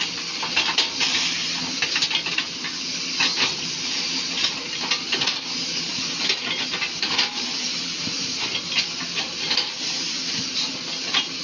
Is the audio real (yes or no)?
yes